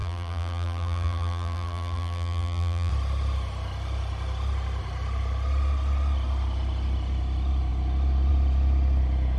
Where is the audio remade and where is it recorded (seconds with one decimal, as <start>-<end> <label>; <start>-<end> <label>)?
0.0-2.9 remade; 2.9-9.4 recorded